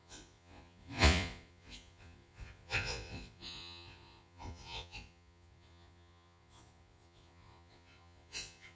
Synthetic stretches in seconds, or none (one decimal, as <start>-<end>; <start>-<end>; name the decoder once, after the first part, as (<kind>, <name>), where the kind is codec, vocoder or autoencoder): 0.0-8.8 (vocoder, Vocos)